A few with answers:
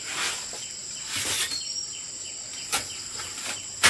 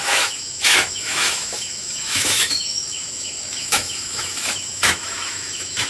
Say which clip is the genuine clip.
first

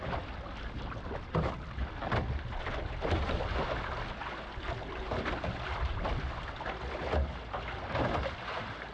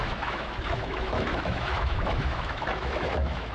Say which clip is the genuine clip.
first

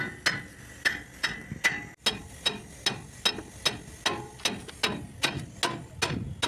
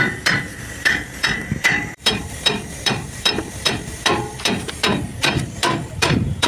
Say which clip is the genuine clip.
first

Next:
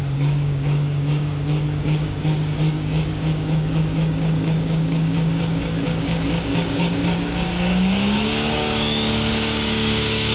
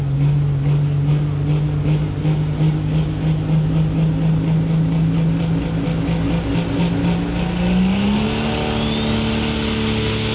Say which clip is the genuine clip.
second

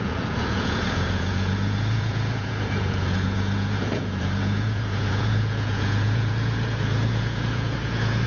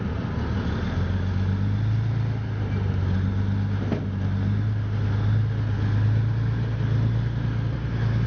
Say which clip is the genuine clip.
second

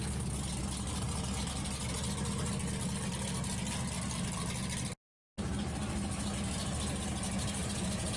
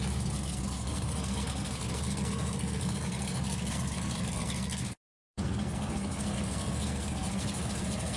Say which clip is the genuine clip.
first